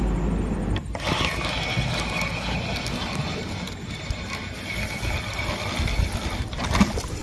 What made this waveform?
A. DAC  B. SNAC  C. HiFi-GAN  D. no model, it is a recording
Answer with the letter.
D